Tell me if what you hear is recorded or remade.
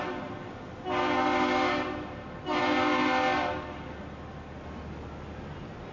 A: recorded